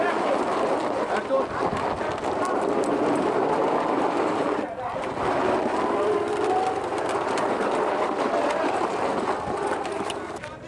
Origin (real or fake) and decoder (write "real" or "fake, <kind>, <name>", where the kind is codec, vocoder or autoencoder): real